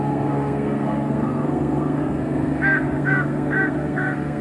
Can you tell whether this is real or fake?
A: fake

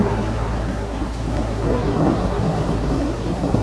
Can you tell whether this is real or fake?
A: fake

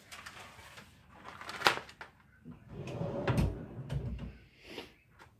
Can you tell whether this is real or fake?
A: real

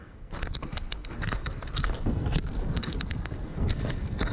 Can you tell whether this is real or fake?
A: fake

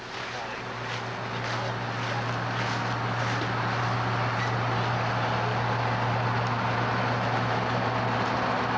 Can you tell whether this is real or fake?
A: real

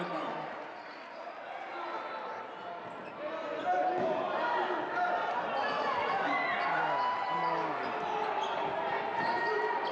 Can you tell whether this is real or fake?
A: real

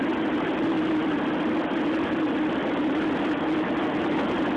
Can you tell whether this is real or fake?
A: real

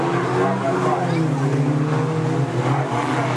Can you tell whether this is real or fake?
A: real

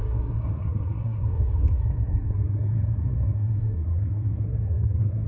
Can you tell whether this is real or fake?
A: fake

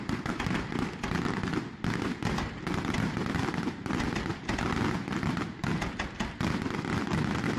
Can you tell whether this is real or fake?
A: real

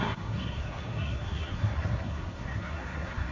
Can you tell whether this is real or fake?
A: fake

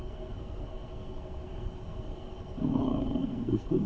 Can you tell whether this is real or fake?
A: fake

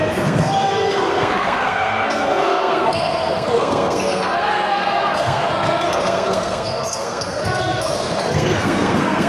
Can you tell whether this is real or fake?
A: fake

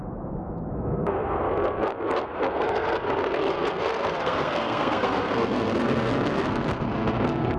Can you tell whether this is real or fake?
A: fake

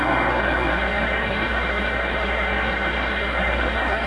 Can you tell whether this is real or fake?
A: fake